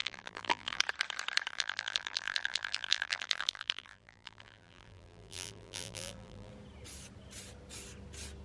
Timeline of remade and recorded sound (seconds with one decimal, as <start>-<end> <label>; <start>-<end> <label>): 0.0-0.8 remade; 0.8-1.5 recorded; 1.5-6.5 remade; 6.5-8.4 recorded